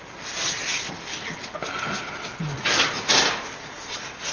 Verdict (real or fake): real